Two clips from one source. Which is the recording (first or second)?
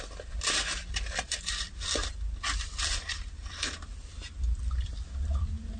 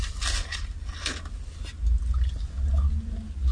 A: second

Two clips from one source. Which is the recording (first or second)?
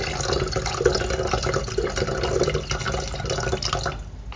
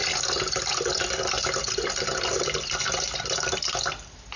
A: first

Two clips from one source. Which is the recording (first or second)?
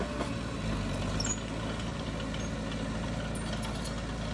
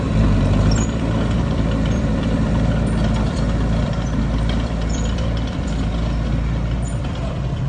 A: first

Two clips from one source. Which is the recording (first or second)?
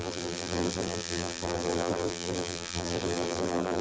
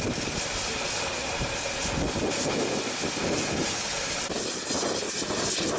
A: second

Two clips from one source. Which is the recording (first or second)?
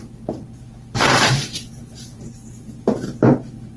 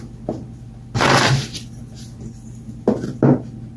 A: second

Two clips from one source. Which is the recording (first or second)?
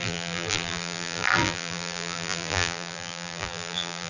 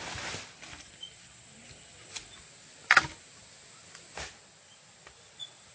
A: second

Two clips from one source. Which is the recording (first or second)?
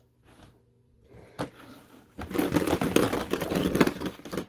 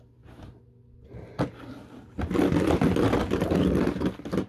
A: second